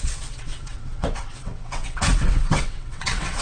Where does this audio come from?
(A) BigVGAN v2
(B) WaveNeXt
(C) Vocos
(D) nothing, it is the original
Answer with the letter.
B